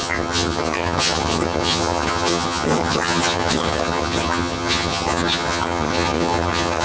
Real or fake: fake